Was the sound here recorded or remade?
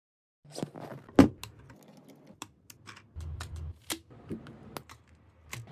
recorded